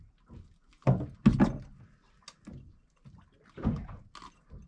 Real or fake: real